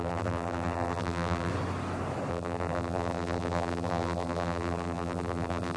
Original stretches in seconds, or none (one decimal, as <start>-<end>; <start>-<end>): 1.5-2.3